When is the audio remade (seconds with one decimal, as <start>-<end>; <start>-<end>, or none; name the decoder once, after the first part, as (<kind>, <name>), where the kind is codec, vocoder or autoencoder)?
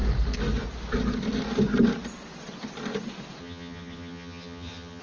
3.4-5.0 (vocoder, HiFi-GAN)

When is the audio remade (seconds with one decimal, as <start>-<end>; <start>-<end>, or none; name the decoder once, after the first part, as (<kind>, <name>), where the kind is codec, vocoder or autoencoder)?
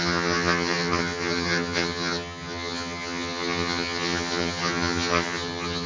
0.0-5.9 (vocoder, HiFi-GAN)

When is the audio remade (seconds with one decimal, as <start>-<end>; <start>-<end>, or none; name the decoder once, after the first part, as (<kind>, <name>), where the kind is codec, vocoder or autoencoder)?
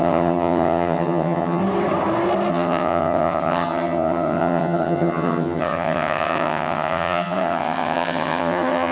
0.0-1.6 (vocoder, HiFi-GAN); 2.5-8.9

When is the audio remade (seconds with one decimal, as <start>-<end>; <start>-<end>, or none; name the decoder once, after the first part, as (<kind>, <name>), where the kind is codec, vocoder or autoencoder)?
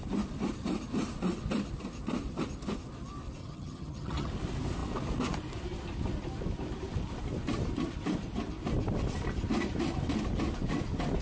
3.4-4.3 (vocoder, HiFi-GAN)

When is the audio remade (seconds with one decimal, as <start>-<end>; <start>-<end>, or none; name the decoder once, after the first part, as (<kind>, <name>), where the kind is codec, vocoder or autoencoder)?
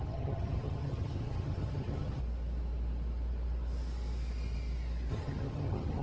0.0-2.2 (vocoder, HiFi-GAN); 5.1-6.0